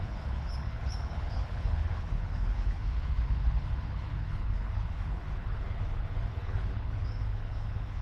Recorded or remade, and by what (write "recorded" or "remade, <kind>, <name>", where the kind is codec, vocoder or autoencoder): remade, codec, HILCodec